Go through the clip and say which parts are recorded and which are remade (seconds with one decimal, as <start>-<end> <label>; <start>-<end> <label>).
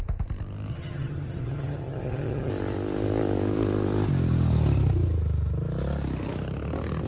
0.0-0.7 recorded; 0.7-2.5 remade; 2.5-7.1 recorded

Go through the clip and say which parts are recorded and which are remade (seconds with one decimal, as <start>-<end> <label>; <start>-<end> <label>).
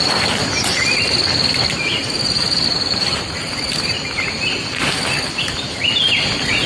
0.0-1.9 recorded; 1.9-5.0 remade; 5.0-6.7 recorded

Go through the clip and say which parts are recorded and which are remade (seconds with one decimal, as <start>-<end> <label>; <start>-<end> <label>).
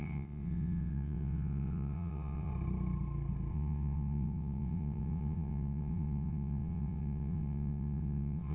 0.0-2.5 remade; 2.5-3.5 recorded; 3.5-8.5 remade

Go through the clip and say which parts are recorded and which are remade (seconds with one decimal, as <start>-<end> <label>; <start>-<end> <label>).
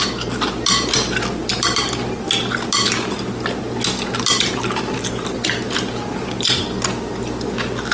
0.0-7.9 recorded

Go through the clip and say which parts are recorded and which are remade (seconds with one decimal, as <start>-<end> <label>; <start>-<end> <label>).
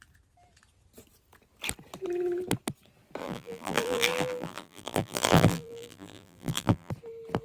0.0-3.2 recorded; 3.2-6.9 remade; 6.9-7.4 recorded